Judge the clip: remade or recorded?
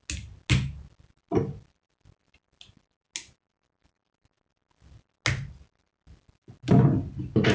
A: recorded